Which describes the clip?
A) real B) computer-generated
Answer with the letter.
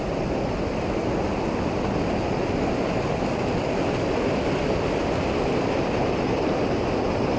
A